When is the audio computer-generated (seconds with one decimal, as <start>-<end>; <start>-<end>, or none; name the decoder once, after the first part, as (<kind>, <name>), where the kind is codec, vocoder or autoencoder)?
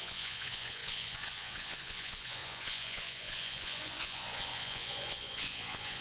0.0-6.0 (vocoder, Vocos)